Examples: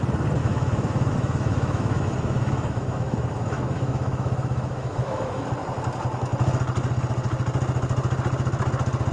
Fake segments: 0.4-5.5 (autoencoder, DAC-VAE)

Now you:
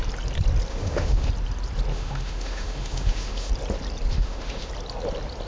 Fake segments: 0.7-1.3 (autoencoder, DAC-VAE); 1.9-3.5; 4.1-4.7

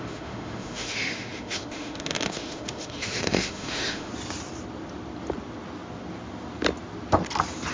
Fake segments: 0.0-4.1 (autoencoder, DAC-VAE)

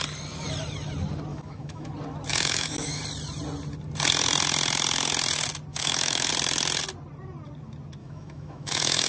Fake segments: 1.3-1.9 (autoencoder, DAC-VAE); 2.3-3.0; 5.7-6.3; 8.0-9.1

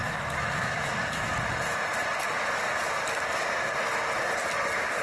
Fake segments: 0.0-1.3 (autoencoder, DAC-VAE)